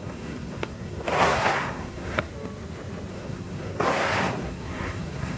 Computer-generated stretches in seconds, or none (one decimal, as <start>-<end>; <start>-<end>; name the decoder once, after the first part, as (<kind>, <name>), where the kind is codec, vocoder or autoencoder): 0.0-2.3 (codec, SNAC); 3.1-5.4